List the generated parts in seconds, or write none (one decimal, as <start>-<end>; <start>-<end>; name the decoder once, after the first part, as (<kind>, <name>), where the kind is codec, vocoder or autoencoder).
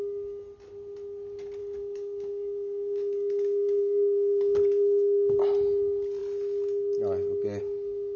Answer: 1.6-5.4 (codec, DAC)